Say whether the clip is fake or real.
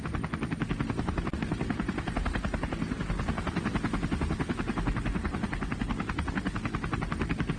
real